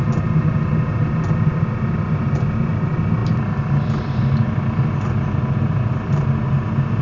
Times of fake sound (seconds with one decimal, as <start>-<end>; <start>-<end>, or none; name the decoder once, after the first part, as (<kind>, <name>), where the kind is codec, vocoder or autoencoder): none

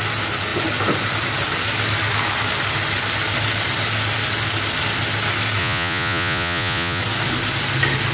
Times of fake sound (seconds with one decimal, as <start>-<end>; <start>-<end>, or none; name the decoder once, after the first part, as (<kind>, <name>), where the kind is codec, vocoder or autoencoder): 5.6-7.0 (vocoder, Vocos)

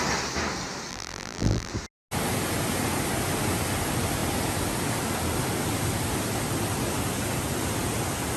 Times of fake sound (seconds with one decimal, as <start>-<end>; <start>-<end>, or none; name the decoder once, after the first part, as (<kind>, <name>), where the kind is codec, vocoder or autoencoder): 0.9-1.7 (vocoder, BigVGAN v2)